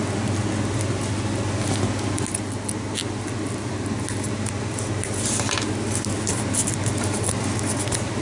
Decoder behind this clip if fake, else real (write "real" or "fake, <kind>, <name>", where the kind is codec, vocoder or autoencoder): real